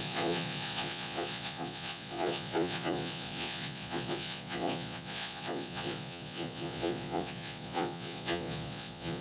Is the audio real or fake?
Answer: fake